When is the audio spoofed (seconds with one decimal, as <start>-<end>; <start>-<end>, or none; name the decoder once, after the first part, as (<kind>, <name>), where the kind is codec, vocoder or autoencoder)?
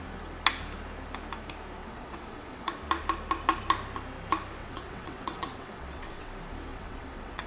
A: 1.8-2.7 (vocoder, WaveNeXt); 4.6-6.3; 6.7-7.5